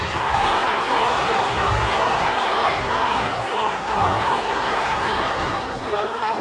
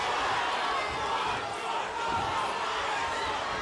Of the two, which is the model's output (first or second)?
first